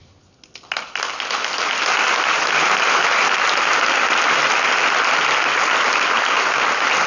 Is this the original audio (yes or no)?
yes